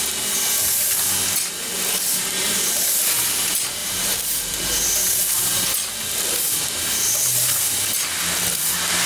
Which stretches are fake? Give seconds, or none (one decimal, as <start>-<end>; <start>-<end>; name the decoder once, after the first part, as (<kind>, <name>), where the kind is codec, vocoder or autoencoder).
3.8-4.7 (vocoder, BigVGAN v2)